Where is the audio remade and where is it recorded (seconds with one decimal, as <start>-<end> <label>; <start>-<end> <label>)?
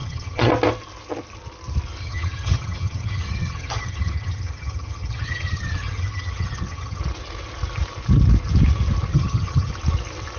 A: 0.0-0.5 remade; 0.5-2.0 recorded; 2.0-7.0 remade; 7.0-9.1 recorded; 9.1-9.7 remade; 9.7-10.4 recorded